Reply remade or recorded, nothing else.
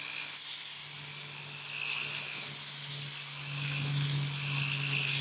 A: recorded